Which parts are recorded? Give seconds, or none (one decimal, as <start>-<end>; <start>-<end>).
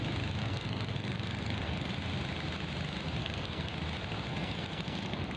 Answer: 0.0-0.4; 1.9-3.2; 3.7-4.3